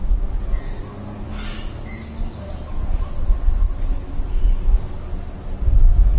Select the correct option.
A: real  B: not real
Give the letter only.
A